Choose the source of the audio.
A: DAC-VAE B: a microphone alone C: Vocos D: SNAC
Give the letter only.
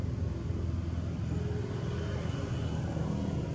B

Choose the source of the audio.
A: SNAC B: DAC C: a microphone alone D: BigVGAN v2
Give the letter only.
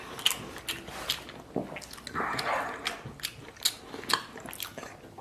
C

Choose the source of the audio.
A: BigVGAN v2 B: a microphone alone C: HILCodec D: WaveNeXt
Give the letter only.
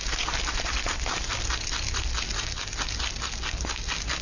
B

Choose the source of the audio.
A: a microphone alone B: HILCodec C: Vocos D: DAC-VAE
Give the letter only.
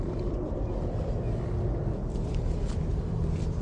A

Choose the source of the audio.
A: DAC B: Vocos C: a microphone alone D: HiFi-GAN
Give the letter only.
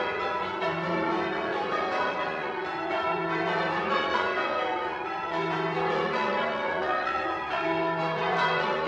B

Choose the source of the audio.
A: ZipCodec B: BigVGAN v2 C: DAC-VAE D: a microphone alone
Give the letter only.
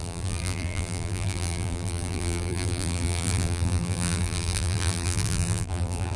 B